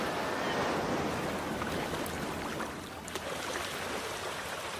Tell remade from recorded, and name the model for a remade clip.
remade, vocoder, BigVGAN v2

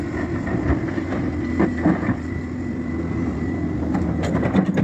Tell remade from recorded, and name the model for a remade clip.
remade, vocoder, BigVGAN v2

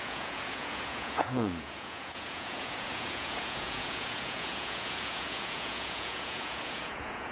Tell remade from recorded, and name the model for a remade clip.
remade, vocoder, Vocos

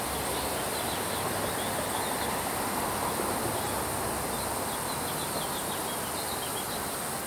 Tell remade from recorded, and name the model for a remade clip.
recorded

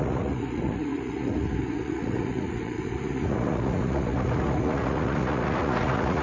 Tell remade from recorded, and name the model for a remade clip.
remade, vocoder, Vocos